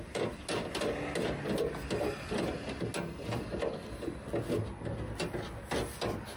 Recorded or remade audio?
recorded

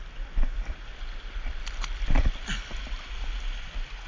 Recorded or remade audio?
recorded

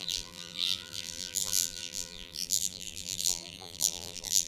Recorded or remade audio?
remade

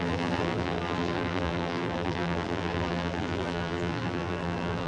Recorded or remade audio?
remade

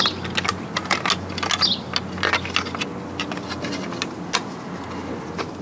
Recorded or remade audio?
recorded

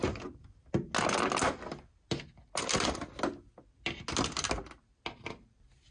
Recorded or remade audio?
recorded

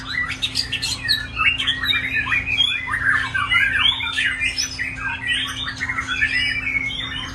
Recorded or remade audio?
recorded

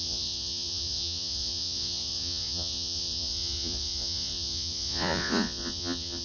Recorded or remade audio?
remade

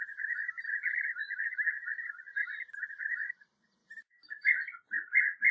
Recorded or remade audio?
recorded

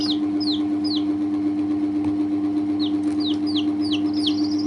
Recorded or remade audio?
recorded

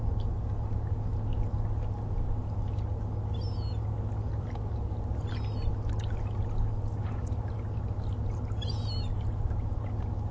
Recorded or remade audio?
recorded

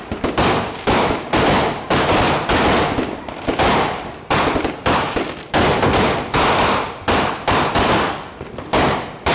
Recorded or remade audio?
recorded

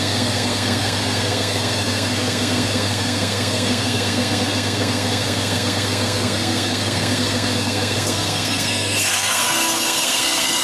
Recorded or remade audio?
remade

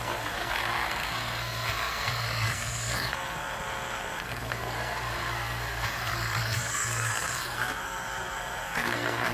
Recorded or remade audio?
remade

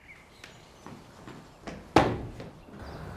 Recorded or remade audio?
recorded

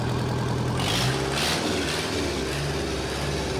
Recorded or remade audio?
recorded